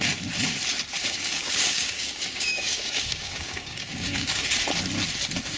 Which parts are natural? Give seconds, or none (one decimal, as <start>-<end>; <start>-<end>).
0.0-1.0; 4.4-5.6